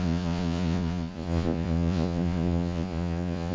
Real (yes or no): no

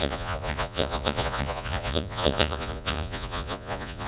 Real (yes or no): no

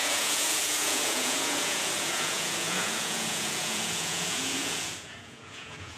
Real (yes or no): no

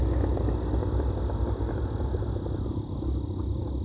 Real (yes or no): yes